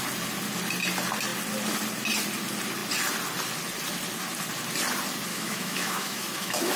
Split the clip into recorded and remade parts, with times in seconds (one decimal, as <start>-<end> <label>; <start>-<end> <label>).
0.0-5.3 recorded; 5.3-6.8 remade